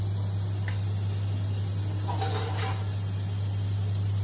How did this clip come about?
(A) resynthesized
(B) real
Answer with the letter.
B